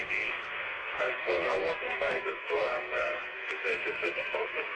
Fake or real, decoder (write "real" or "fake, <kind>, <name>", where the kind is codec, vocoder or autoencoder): fake, codec, SNAC